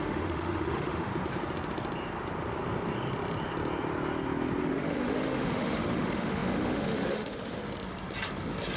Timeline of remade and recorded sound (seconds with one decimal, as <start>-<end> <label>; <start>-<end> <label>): 0.0-1.1 remade; 1.1-4.6 recorded; 4.6-7.6 remade; 7.6-8.8 recorded